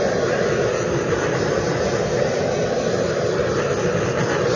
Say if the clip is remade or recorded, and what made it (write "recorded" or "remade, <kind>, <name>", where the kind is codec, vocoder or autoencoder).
recorded